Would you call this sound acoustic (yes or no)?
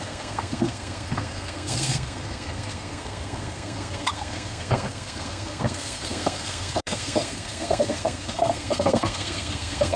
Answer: no